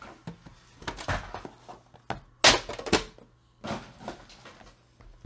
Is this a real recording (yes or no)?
yes